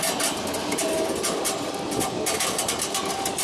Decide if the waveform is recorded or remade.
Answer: recorded